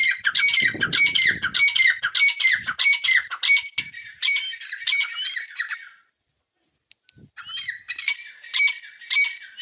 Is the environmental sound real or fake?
real